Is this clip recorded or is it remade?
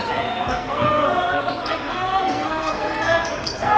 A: remade